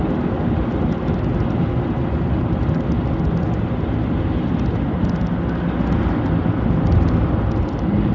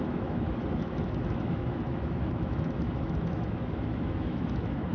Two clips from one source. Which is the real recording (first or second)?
first